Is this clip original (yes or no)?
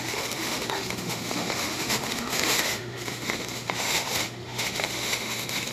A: no